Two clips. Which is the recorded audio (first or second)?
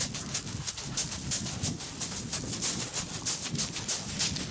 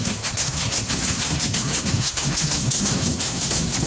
first